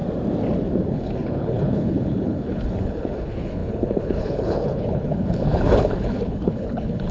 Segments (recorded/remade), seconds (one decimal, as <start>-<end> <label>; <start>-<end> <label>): 0.0-0.9 recorded; 0.9-7.1 remade